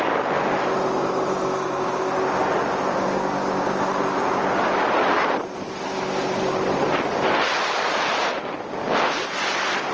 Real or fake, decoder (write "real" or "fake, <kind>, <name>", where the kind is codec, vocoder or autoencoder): real